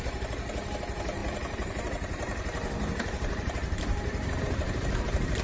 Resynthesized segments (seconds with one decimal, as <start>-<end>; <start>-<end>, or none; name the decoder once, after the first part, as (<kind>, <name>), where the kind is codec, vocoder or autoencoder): 0.0-5.4 (vocoder, BigVGAN v2)